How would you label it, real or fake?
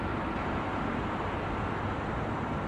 real